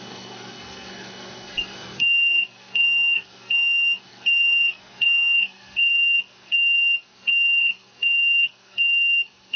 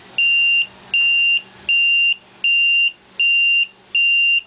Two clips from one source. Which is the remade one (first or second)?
first